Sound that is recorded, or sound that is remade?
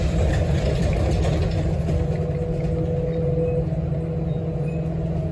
recorded